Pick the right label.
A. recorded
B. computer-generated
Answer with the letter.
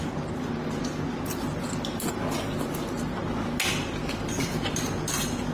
A